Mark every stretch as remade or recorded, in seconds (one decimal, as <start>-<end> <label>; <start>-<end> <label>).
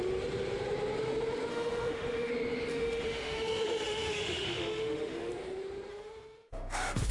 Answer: 0.0-1.5 recorded; 1.5-2.3 remade; 2.3-2.7 recorded; 2.7-5.3 remade; 5.3-5.9 recorded; 5.9-7.1 remade